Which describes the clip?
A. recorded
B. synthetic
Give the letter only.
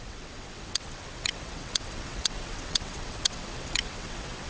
B